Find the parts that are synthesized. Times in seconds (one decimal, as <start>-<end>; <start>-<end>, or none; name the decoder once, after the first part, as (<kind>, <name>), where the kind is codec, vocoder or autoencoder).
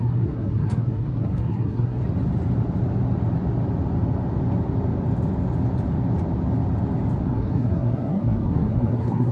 0.0-2.0 (codec, SNAC); 7.2-9.3